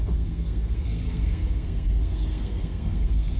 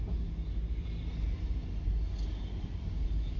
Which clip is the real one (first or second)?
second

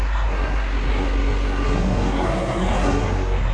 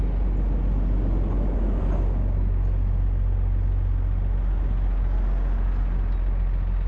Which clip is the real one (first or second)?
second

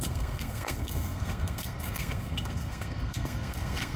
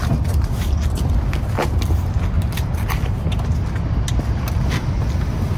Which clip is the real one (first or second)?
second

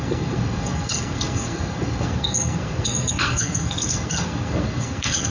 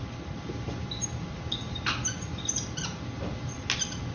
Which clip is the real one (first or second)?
second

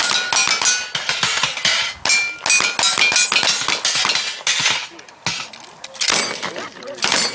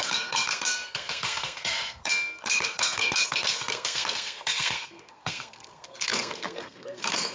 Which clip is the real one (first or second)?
first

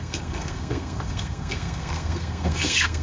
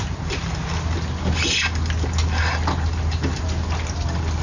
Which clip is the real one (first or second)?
second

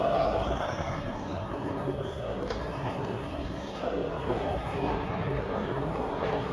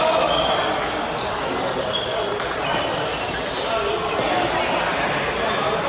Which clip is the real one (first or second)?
second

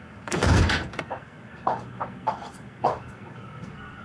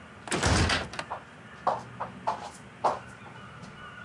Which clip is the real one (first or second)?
second